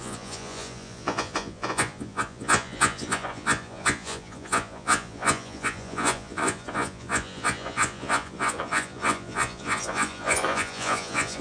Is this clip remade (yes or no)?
yes